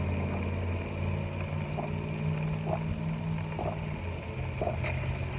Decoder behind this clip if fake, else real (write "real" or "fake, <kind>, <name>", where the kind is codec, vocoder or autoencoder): real